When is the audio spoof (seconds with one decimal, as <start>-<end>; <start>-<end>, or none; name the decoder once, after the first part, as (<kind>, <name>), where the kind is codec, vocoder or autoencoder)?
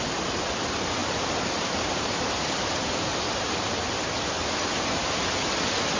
1.0-4.0 (vocoder, BigVGAN v2); 4.4-5.3